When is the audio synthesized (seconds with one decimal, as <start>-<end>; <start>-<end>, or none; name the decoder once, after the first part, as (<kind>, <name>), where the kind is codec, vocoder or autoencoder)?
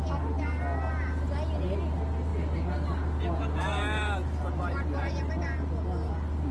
none